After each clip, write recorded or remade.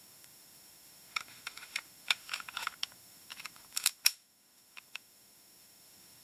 remade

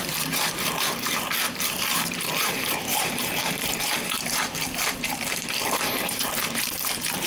remade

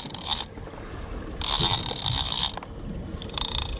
recorded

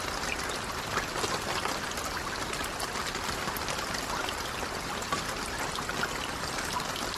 recorded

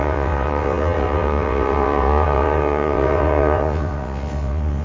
remade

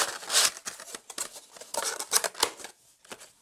recorded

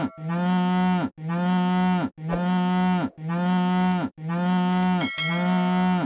recorded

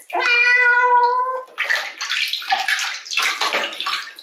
recorded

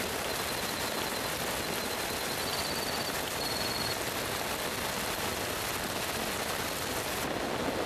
recorded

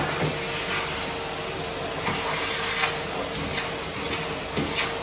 recorded